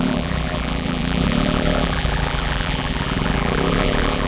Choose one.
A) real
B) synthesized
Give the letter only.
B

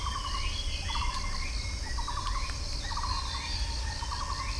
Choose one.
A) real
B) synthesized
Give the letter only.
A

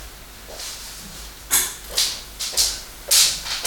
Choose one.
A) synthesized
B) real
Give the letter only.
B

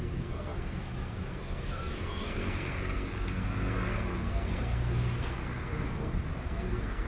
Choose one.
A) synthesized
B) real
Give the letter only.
A